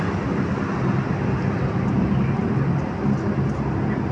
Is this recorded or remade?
recorded